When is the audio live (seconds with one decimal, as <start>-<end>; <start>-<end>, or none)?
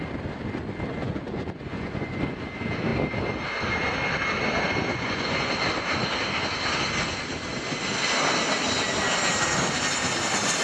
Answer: 0.0-0.9; 2.2-4.9; 5.5-10.6